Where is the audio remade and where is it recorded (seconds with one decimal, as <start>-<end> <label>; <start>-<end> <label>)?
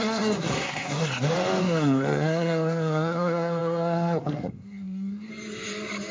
0.0-1.1 remade; 1.1-1.6 recorded; 1.6-5.3 remade; 5.3-6.1 recorded